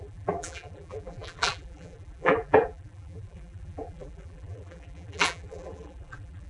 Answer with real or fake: fake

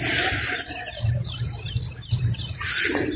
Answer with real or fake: real